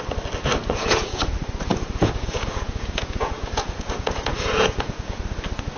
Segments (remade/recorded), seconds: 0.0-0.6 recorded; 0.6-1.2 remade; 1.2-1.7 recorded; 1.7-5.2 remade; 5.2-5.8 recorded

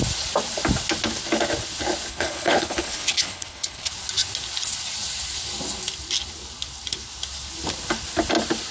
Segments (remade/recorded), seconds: 0.0-2.1 recorded; 2.1-3.9 remade; 3.9-8.7 recorded

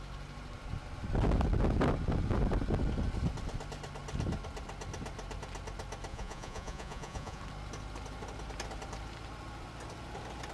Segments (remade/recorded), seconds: 0.0-6.1 recorded; 6.1-7.4 remade; 7.4-10.5 recorded

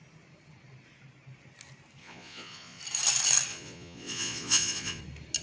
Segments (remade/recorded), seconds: 0.0-2.0 recorded; 2.0-2.8 remade; 2.8-3.5 recorded; 3.5-5.0 remade; 5.0-5.4 recorded

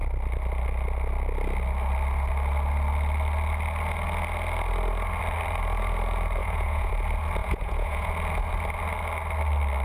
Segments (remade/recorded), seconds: 0.0-6.4 recorded; 6.4-6.9 remade; 6.9-7.4 recorded; 7.4-8.1 remade; 8.1-9.8 recorded

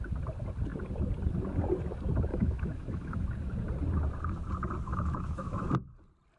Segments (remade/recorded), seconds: 0.0-2.3 recorded; 2.3-3.2 remade; 3.2-4.9 recorded; 4.9-5.7 remade; 5.7-6.4 recorded